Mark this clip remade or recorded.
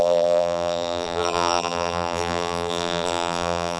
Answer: remade